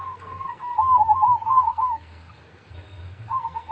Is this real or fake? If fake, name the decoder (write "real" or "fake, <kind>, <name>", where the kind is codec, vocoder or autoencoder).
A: fake, codec, SNAC